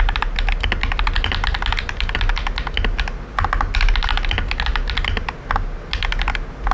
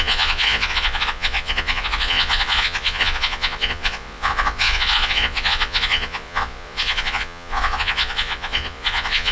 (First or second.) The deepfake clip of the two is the second